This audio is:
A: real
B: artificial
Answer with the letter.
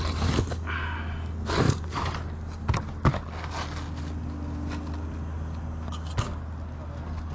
A